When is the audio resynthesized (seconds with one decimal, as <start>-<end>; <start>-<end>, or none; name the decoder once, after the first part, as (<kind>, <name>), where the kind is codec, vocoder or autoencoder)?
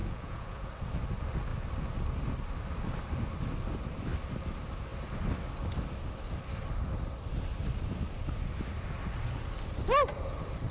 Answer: 0.0-0.7 (vocoder, Vocos)